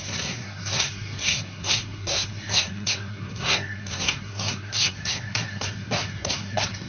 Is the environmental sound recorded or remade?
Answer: remade